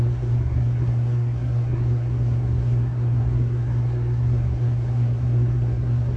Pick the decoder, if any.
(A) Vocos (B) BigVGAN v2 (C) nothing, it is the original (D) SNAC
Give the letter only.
D